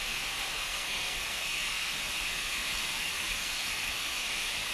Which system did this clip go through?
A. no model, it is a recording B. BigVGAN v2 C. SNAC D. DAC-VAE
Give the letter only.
C